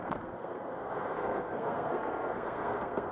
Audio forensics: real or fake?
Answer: fake